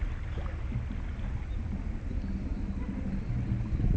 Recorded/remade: recorded